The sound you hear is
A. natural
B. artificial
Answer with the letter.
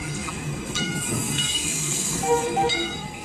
B